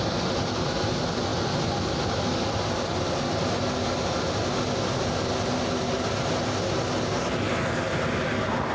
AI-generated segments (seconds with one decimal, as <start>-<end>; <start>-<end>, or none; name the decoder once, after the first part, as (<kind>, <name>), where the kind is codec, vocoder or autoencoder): none